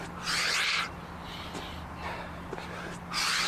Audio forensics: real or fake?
real